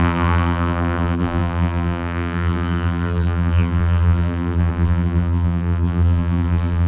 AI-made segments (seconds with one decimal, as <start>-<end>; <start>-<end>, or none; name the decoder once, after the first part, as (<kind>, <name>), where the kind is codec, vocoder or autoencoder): 0.0-6.9 (vocoder, BigVGAN v2)